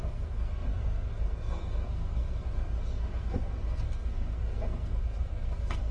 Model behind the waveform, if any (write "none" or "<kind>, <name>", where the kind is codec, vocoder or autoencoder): codec, SNAC